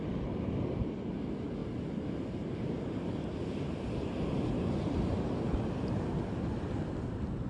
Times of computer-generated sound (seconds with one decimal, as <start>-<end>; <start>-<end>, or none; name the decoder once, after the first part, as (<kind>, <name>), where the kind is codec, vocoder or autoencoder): none